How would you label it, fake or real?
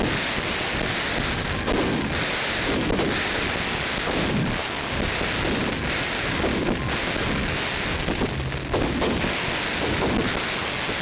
real